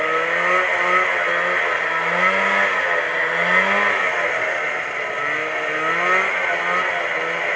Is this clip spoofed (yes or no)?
no